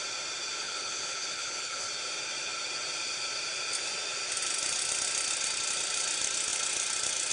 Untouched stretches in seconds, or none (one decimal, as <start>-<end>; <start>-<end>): 0.0-0.6; 1.9-7.3